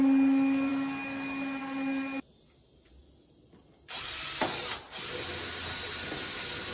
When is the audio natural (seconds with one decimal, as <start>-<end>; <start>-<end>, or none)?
0.0-6.7